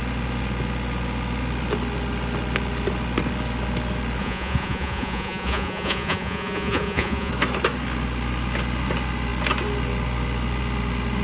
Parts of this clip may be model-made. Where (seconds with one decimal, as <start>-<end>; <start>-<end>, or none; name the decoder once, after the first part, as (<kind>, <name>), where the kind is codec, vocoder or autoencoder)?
4.2-7.3 (vocoder, Vocos)